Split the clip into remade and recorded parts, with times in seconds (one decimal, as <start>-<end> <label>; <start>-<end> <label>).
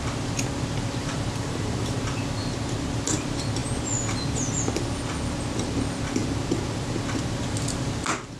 0.0-1.0 recorded; 1.0-2.0 remade; 2.0-8.4 recorded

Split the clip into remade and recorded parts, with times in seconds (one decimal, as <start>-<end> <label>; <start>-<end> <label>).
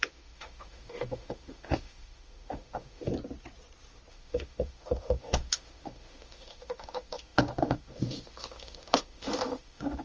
0.0-3.1 remade; 3.1-4.1 recorded; 4.1-10.0 remade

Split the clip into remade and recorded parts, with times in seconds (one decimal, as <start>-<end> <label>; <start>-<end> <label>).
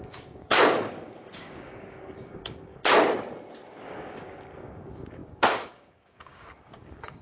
0.0-2.8 remade; 2.8-3.8 recorded; 3.8-7.2 remade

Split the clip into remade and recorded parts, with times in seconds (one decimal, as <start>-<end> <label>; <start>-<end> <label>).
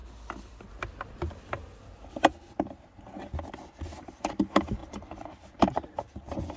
0.0-4.0 recorded; 4.0-6.6 remade